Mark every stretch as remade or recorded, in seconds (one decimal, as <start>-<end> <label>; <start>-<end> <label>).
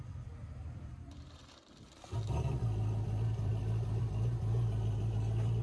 0.0-3.5 remade; 3.5-4.0 recorded; 4.0-5.6 remade